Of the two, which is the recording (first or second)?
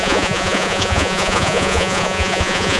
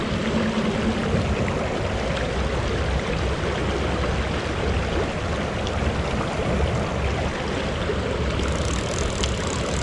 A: second